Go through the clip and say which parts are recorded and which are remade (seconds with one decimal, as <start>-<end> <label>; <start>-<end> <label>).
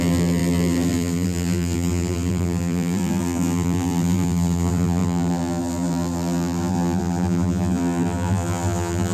0.0-9.1 remade